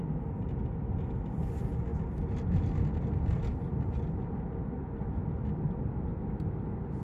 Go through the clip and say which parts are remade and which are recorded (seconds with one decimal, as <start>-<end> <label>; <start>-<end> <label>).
0.0-7.0 recorded